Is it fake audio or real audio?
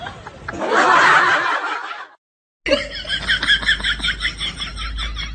real